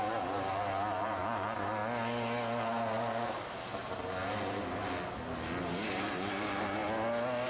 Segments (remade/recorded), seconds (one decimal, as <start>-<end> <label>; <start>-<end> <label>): 0.0-1.8 remade; 1.8-5.6 recorded; 5.6-6.8 remade; 6.8-7.5 recorded